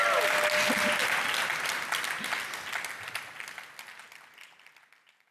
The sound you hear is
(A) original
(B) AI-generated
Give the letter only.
A